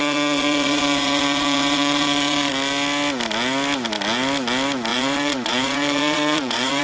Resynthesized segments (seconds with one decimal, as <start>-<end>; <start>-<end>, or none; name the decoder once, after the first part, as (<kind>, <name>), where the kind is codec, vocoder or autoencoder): 0.0-2.5 (vocoder, Vocos); 4.9-6.8